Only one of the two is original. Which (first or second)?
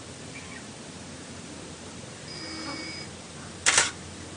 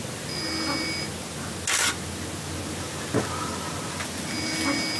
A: second